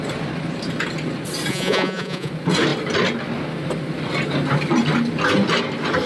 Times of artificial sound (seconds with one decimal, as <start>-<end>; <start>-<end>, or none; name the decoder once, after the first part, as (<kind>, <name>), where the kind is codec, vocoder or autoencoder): 1.5-2.3 (vocoder, Vocos)